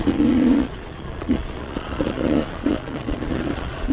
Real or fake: fake